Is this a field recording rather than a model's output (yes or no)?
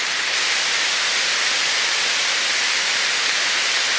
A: yes